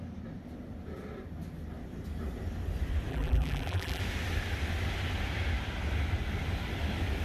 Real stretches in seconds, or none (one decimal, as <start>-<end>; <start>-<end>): 0.0-3.1; 4.0-7.2